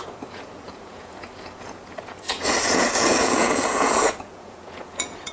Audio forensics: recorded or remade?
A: remade